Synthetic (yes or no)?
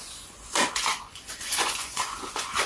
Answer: yes